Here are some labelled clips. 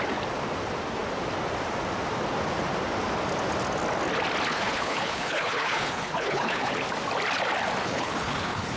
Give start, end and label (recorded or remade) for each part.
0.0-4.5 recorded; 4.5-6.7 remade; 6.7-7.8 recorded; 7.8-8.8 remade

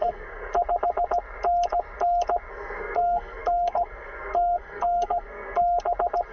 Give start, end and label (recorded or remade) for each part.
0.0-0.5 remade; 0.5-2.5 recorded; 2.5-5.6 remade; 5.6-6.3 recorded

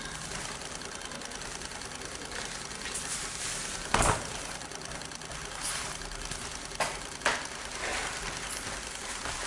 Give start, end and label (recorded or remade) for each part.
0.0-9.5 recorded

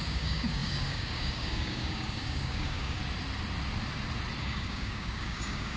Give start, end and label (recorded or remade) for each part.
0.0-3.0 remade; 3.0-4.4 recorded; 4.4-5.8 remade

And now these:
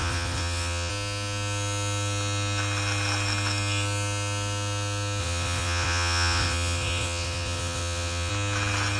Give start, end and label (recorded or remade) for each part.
0.0-0.9 remade; 0.9-5.2 recorded; 5.2-8.3 remade; 8.3-9.0 recorded

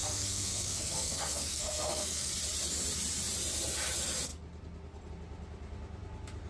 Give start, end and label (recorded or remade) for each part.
0.0-2.3 remade; 2.3-6.5 recorded

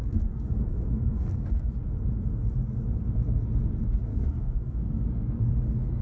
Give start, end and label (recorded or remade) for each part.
0.0-1.7 remade; 1.7-4.1 recorded; 4.1-5.4 remade; 5.4-6.0 recorded

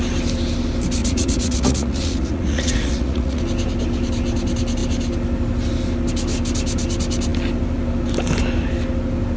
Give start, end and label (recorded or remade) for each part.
0.0-1.0 recorded; 1.0-3.4 remade; 3.4-9.4 recorded